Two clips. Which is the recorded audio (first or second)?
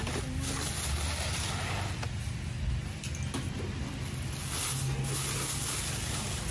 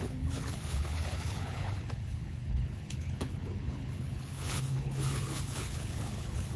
first